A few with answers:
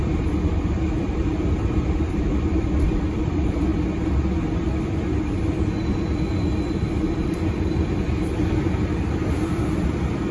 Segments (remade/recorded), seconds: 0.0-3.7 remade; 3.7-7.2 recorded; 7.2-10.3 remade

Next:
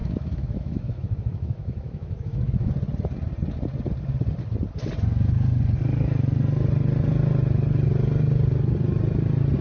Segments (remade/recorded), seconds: 0.0-2.7 remade; 2.7-9.6 recorded

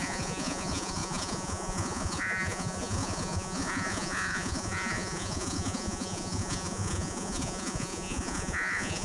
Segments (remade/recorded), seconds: 0.0-9.0 remade

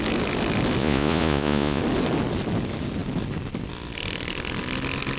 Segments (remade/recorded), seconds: 0.0-0.8 recorded; 0.8-1.8 remade; 1.8-5.2 recorded

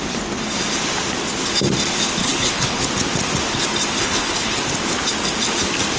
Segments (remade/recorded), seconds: 0.0-2.2 recorded; 2.2-2.9 remade; 2.9-4.0 recorded; 4.0-4.6 remade; 4.6-6.0 recorded

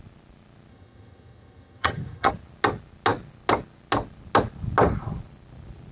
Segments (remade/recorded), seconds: 0.0-0.7 recorded; 0.7-2.3 remade; 2.3-5.9 recorded

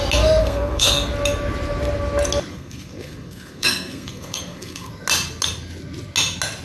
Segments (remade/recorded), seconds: 0.0-0.4 recorded; 0.4-1.1 remade; 1.1-2.5 recorded; 2.5-4.9 remade; 4.9-6.6 recorded

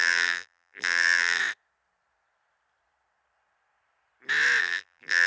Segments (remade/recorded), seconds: 0.0-1.4 remade; 1.4-4.6 recorded; 4.6-5.3 remade